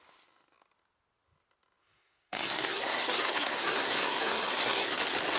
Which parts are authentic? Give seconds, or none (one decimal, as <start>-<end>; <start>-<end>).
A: 0.0-1.8; 5.0-5.4